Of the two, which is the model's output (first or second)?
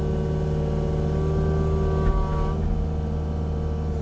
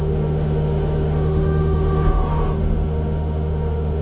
second